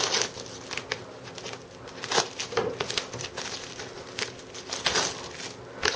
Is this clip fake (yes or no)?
no